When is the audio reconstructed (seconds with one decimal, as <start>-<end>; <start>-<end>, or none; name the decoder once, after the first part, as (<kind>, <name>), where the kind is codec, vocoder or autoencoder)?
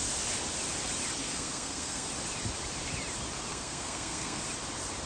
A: 1.2-2.1 (codec, SNAC); 3.5-4.4